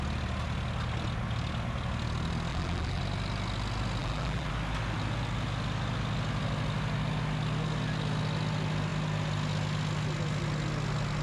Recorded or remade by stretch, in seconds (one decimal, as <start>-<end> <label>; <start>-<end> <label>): 0.0-2.5 recorded; 2.5-3.0 remade; 3.0-4.0 recorded; 4.0-4.5 remade; 4.5-11.2 recorded